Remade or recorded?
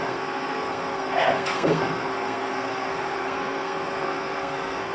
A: remade